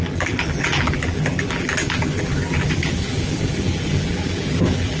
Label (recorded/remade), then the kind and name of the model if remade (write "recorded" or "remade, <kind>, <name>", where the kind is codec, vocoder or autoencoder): remade, vocoder, BigVGAN v2